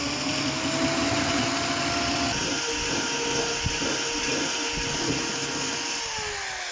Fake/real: real